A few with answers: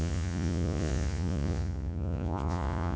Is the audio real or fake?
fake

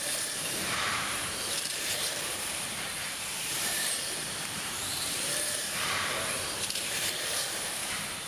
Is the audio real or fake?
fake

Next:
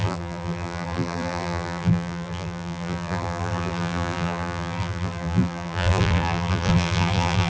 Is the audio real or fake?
fake